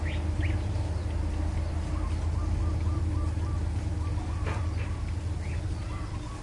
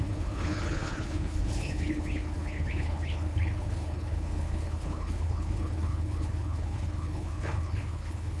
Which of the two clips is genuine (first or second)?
first